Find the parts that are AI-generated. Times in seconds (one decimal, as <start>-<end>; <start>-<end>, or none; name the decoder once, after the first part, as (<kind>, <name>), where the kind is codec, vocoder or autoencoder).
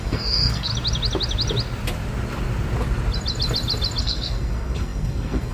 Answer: 0.0-0.7 (codec, SNAC); 4.0-5.5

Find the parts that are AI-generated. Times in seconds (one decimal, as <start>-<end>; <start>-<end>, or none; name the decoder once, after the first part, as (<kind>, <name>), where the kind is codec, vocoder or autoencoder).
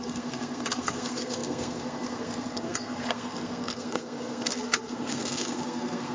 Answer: 0.0-6.1 (codec, SNAC)